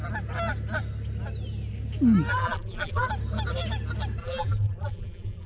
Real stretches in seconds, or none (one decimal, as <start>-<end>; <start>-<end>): 0.0-2.3; 3.1-4.2